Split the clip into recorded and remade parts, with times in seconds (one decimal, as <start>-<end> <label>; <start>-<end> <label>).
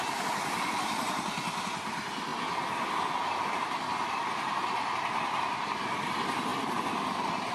0.0-6.5 remade; 6.5-7.5 recorded